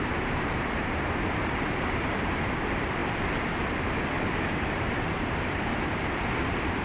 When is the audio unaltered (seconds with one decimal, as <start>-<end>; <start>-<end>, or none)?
3.0-4.5